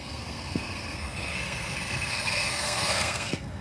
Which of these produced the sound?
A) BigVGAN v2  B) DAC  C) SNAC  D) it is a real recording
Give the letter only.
C